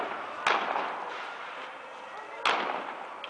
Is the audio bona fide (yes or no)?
yes